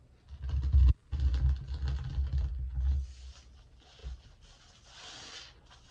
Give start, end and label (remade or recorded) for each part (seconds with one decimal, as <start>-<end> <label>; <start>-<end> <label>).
0.0-5.9 recorded